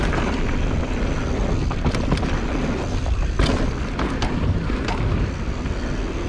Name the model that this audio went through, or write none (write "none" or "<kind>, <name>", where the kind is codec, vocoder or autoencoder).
none